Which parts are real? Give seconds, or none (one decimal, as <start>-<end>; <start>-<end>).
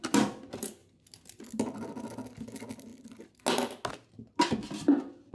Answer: 0.0-5.3